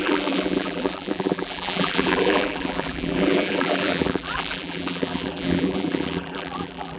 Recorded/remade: remade